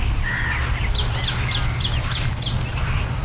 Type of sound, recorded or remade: recorded